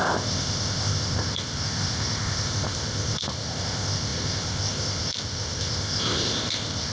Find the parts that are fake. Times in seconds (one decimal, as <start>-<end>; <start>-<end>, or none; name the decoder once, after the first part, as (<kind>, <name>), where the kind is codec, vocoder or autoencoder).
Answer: 0.0-6.9 (codec, ZipCodec)